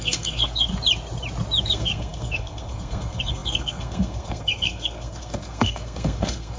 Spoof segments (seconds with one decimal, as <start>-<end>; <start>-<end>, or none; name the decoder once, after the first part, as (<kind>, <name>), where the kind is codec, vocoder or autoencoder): 0.0-0.7 (codec, SNAC); 1.6-6.6